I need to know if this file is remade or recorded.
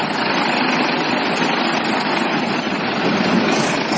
recorded